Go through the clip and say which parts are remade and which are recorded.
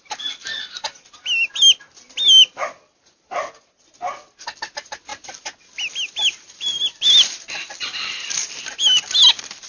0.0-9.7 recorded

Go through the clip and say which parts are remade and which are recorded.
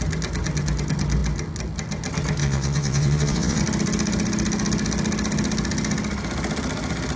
0.0-2.4 recorded; 2.4-3.6 remade; 3.6-7.2 recorded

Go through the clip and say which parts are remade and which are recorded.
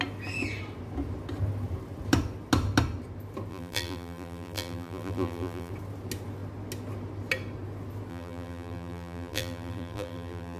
0.0-3.5 recorded; 3.5-5.7 remade; 5.7-8.1 recorded; 8.1-10.6 remade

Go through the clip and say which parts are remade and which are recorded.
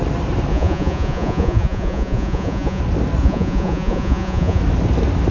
0.0-0.5 recorded; 0.5-2.8 remade; 2.8-3.2 recorded; 3.2-4.6 remade; 4.6-5.3 recorded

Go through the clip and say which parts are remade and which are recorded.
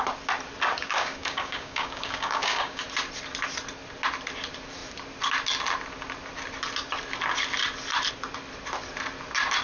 0.0-0.7 recorded; 0.7-2.8 remade; 2.8-9.6 recorded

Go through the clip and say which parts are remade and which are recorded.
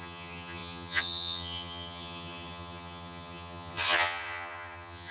0.0-5.1 remade